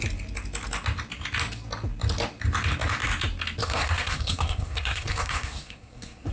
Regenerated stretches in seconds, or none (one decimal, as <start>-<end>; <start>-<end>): 3.6-6.3